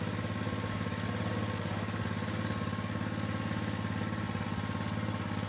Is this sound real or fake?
real